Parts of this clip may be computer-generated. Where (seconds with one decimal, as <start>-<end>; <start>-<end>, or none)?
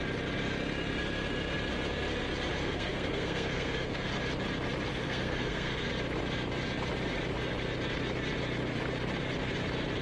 2.6-4.1; 4.9-5.9